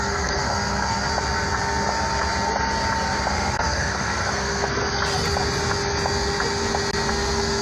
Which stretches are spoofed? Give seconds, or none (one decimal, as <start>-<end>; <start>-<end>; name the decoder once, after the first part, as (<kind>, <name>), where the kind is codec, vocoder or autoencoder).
0.0-1.1 (codec, SNAC); 3.3-4.8; 7.1-7.6

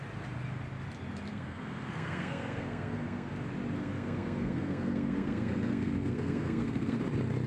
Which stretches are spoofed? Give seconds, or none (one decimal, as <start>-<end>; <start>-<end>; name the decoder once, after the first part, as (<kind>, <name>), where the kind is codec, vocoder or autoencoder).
1.3-3.3 (codec, SNAC); 3.8-7.0